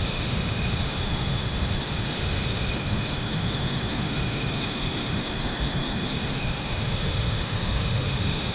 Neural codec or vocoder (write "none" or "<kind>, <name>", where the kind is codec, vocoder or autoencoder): autoencoder, DAC-VAE